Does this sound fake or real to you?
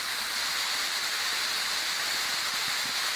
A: real